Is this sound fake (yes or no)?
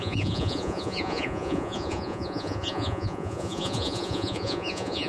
yes